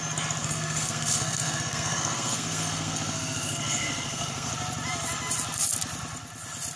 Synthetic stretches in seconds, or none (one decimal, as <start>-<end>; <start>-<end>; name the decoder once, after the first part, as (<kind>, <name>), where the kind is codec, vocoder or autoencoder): 0.4-4.5 (codec, SNAC)